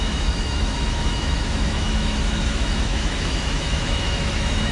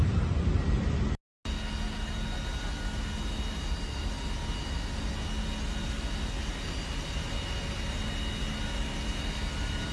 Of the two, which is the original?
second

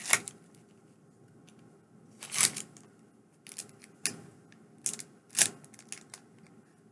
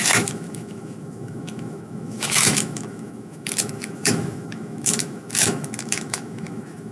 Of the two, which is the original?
first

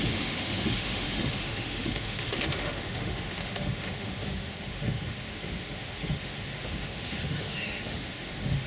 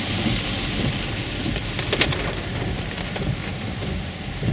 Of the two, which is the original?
second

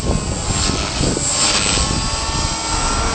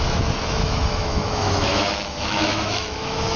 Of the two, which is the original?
first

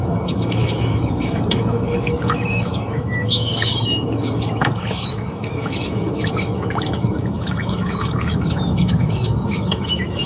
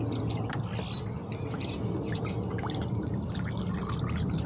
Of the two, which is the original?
second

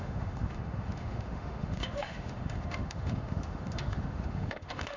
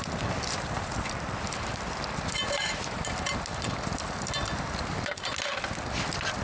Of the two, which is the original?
second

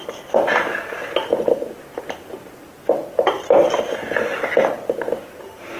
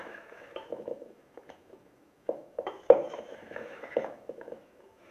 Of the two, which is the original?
first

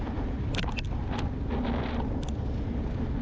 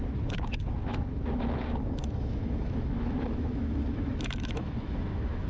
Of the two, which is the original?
first